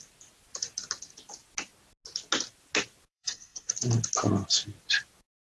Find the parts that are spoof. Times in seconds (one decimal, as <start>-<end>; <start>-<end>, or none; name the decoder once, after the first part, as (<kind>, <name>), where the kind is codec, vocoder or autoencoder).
3.1-3.7 (codec, SNAC)